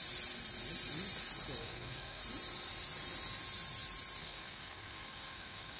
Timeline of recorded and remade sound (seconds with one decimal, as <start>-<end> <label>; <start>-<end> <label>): 0.0-1.6 recorded; 1.6-2.2 remade; 2.2-4.2 recorded; 4.2-5.8 remade